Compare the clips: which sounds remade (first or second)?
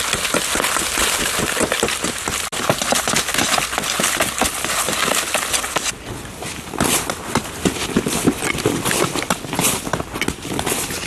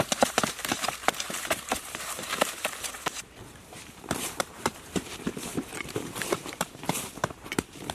second